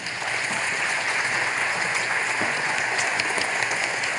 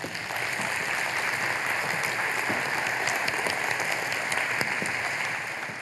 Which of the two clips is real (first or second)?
second